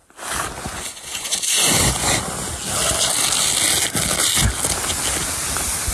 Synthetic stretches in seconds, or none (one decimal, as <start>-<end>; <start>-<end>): 0.6-2.2